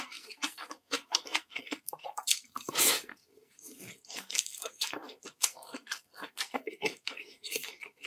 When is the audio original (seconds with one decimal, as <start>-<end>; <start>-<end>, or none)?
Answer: none